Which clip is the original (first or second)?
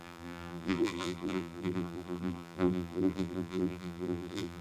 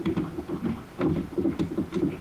second